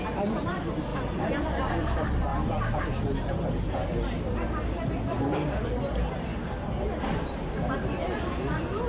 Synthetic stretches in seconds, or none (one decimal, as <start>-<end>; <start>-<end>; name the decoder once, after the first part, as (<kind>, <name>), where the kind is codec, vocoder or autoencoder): 2.3-5.6 (vocoder, BigVGAN v2)